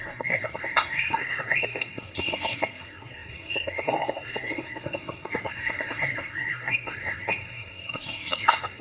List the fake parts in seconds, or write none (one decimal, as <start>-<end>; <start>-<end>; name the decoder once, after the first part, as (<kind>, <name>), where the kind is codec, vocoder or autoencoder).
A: 0.0-8.8 (codec, SNAC)